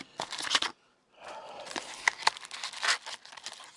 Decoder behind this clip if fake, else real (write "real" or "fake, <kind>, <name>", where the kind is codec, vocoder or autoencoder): real